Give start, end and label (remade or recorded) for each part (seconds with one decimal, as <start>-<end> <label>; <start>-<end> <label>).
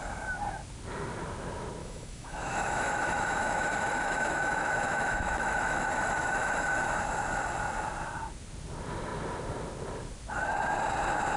0.0-1.8 recorded; 1.8-7.0 remade; 7.0-11.4 recorded